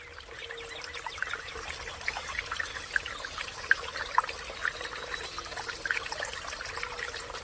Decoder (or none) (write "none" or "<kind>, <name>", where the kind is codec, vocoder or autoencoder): none